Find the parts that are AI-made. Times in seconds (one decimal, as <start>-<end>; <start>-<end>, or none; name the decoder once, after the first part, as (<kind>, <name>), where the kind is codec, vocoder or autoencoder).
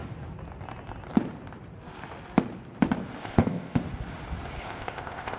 3.2-3.8 (codec, ZipCodec); 4.6-5.4